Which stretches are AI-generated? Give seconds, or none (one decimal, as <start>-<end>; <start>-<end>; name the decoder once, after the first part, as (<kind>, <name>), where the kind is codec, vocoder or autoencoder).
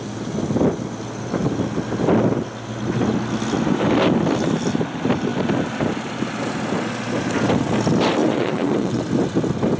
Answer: 8.2-9.0 (vocoder, Vocos)